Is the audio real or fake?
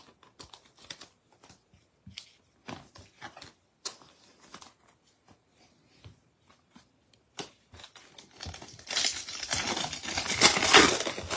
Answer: real